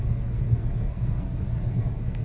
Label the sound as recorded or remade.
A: remade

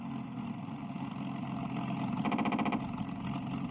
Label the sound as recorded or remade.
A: recorded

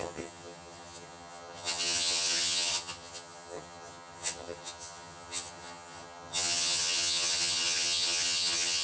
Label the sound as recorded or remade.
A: remade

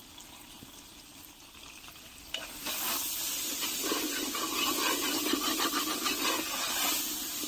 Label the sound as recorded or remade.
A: recorded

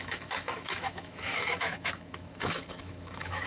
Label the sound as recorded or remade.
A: remade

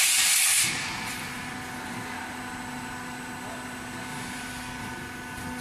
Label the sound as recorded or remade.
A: recorded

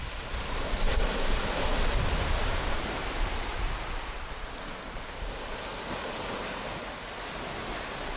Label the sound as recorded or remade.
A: recorded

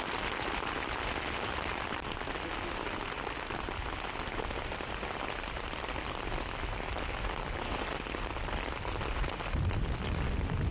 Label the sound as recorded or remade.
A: recorded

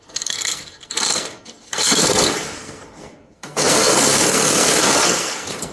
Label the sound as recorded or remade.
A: remade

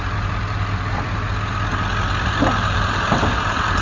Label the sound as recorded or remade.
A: remade